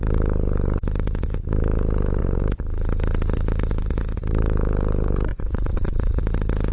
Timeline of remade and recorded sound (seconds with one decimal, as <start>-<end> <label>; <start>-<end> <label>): 0.0-5.3 recorded; 5.3-6.2 remade; 6.2-6.7 recorded

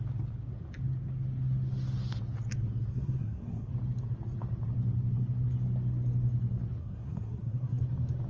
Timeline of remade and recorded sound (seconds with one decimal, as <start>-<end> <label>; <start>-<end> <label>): 0.0-2.9 recorded; 2.9-3.7 remade; 3.7-6.8 recorded; 6.8-7.8 remade; 7.8-8.3 recorded

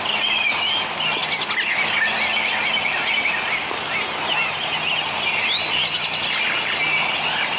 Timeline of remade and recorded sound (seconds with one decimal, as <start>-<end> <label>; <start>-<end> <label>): 0.0-1.2 recorded; 1.2-1.9 remade; 1.9-7.6 recorded

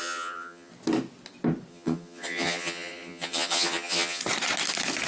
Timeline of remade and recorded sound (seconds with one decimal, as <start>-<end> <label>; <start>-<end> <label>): 0.0-0.7 remade; 0.7-1.7 recorded; 1.7-4.2 remade; 4.2-5.1 recorded

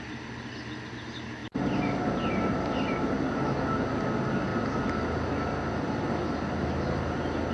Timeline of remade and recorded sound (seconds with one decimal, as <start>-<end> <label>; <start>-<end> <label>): 0.0-7.5 recorded